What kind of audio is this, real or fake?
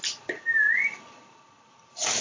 real